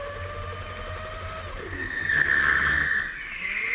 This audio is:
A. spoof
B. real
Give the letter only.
B